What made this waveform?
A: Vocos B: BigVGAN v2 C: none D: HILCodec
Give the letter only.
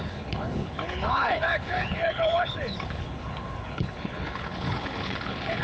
D